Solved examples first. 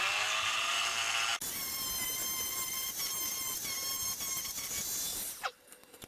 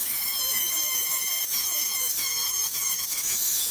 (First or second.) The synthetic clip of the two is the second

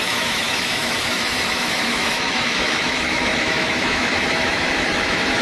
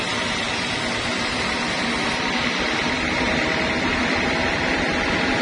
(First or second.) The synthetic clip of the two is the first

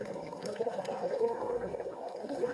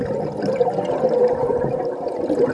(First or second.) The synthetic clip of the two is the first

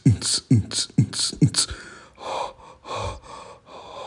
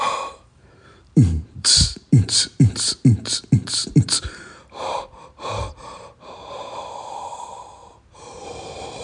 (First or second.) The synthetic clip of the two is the second